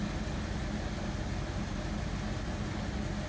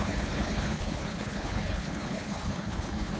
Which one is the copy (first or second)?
second